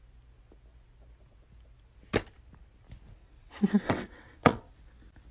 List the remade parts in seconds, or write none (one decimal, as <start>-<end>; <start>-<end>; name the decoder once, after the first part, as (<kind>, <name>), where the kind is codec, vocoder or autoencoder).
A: 3.2-4.7 (vocoder, WaveNeXt)

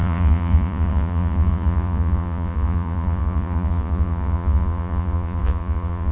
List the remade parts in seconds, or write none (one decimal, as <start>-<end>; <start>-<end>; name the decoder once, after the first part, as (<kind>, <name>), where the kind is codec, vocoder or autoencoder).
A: 0.0-6.1 (vocoder, Vocos)